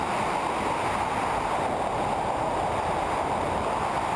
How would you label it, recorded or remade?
recorded